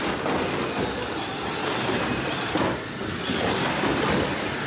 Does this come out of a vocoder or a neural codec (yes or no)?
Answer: no